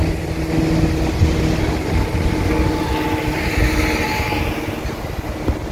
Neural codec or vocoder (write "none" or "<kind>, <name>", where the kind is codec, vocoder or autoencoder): none